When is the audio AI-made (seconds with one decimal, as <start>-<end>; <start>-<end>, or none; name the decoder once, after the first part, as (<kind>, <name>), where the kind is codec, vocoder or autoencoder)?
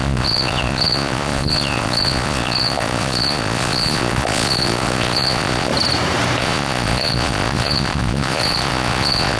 0.0-5.7 (vocoder, Vocos); 6.4-9.4